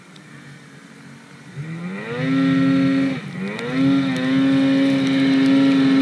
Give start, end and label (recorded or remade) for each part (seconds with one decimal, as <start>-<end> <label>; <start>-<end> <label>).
0.0-6.0 recorded